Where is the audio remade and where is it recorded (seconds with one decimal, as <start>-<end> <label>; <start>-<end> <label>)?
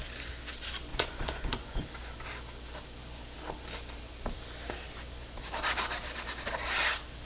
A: 0.0-0.9 recorded; 0.9-1.8 remade; 1.8-7.2 recorded